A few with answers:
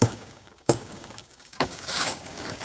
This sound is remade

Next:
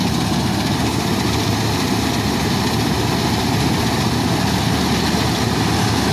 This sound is recorded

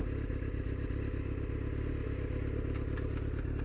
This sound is recorded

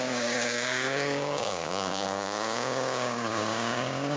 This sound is remade